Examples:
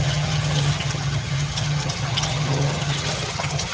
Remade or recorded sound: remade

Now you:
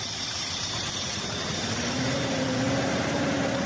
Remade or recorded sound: remade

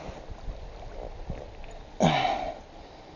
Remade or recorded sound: recorded